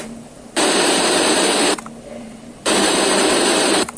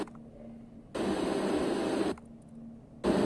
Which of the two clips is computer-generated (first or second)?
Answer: first